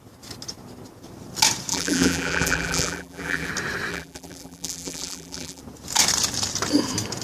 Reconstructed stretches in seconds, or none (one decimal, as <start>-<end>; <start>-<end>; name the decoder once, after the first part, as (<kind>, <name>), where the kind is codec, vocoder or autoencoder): 1.7-3.5 (vocoder, BigVGAN v2); 3.9-5.6